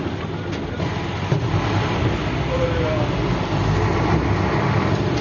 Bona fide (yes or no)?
yes